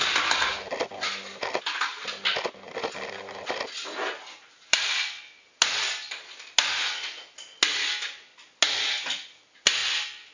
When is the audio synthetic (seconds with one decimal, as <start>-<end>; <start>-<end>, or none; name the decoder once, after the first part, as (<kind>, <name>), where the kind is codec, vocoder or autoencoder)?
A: none